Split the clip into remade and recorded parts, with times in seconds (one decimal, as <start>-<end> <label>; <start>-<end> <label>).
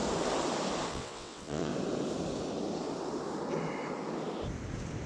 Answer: 0.0-0.9 recorded; 0.9-1.7 remade; 1.7-5.1 recorded